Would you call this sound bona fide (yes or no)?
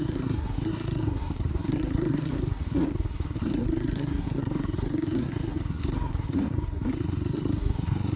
no